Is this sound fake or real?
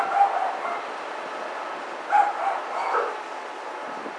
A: real